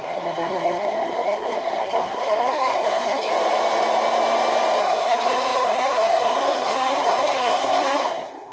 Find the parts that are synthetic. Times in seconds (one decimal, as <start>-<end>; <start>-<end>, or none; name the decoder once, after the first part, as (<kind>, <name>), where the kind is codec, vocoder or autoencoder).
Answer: 0.0-3.3 (codec, SNAC); 4.8-8.5